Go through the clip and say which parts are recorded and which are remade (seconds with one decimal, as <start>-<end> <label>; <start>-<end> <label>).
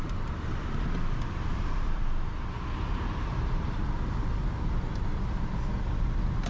0.0-2.0 remade; 2.0-5.9 recorded; 5.9-6.5 remade